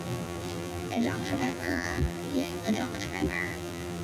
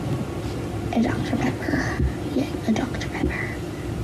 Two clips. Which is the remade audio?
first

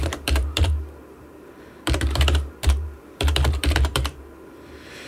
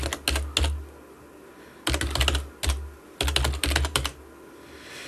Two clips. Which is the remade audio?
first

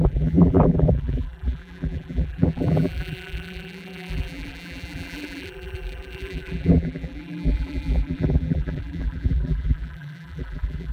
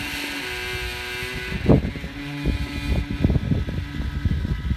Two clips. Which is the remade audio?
first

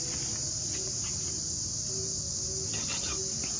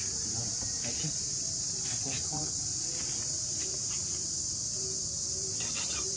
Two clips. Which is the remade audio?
second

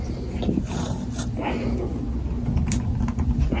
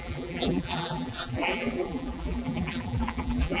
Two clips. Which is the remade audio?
second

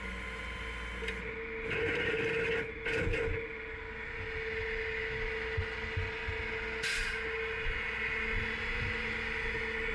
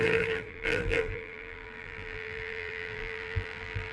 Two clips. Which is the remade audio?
second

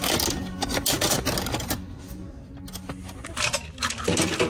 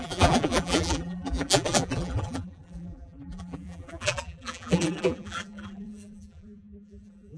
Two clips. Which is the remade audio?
second